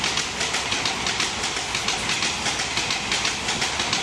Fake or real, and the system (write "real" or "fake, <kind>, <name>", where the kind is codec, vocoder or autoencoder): real